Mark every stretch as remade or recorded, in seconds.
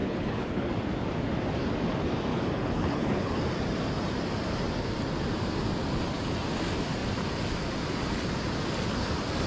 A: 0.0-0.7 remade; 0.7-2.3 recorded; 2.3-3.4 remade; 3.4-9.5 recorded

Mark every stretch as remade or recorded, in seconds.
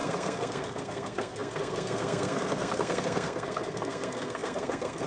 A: 0.0-5.1 remade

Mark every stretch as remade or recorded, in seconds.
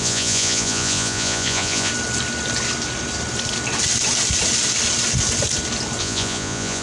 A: 0.0-1.9 remade; 1.9-6.0 recorded; 6.0-6.8 remade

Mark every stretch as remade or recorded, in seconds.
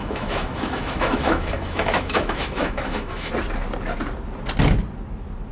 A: 0.0-3.3 remade; 3.3-5.5 recorded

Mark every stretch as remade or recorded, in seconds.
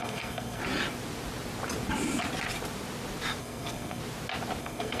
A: 0.0-0.6 remade; 0.6-3.4 recorded; 3.4-4.0 remade; 4.0-4.6 recorded; 4.6-5.0 remade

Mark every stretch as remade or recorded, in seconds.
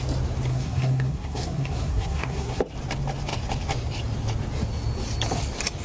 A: 0.0-0.5 recorded; 0.5-2.6 remade; 2.6-5.8 recorded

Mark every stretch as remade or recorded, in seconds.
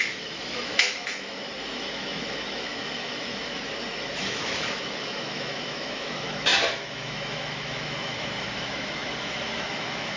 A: 0.0-10.2 remade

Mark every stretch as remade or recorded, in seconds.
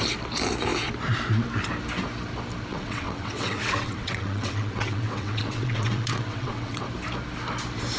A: 0.0-2.7 recorded; 2.7-6.9 remade; 6.9-8.0 recorded